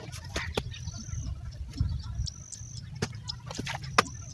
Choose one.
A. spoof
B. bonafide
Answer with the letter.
B